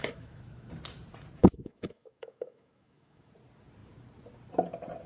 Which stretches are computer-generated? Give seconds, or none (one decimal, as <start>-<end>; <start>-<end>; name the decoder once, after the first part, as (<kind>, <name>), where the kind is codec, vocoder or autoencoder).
0.0-0.7 (autoencoder, DAC-VAE); 1.4-3.3